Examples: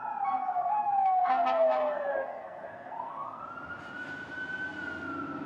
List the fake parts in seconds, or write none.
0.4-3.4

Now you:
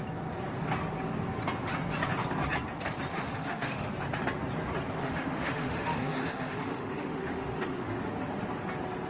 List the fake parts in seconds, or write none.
3.1-3.9; 5.0-8.0